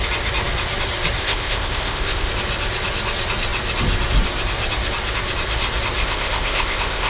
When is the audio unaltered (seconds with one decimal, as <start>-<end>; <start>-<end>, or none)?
0.0-1.2; 2.3-6.0